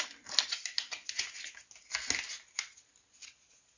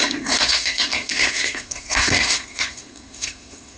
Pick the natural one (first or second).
first